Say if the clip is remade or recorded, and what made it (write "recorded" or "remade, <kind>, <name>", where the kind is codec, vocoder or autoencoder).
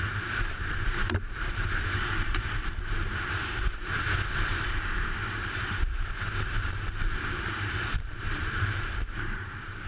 remade, vocoder, BigVGAN v2